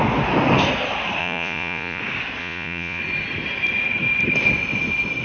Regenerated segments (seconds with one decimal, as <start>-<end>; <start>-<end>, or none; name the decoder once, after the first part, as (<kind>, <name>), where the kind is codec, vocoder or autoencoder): 1.2-2.0 (vocoder, Vocos); 2.4-3.0